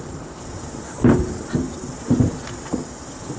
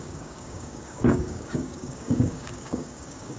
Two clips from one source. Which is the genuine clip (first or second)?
first